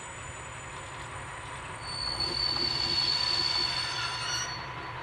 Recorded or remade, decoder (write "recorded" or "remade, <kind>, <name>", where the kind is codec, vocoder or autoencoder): recorded